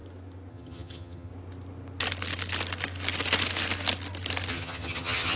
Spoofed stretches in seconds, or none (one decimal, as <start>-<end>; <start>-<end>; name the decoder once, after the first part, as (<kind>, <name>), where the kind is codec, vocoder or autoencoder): 0.5-1.3 (vocoder, HiFi-GAN); 4.5-5.4